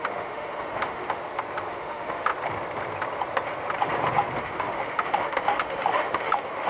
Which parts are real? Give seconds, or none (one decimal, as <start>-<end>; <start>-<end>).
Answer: 1.2-1.7; 2.3-4.4